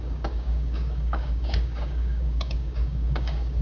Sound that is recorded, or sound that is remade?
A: remade